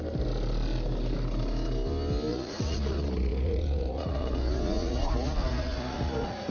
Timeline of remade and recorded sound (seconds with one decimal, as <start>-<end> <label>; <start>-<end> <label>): 0.0-2.3 recorded; 2.3-6.5 remade